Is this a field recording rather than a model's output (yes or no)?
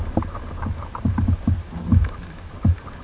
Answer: yes